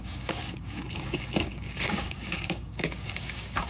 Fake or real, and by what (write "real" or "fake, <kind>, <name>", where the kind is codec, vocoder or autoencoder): fake, codec, DAC